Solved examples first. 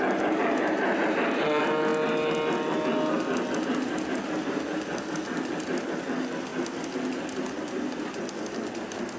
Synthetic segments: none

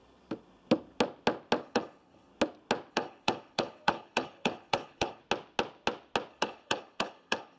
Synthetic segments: 1.6-2.3 (codec, HILCodec); 2.9-5.2; 6.3-7.6